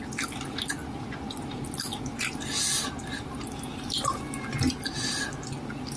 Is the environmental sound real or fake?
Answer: real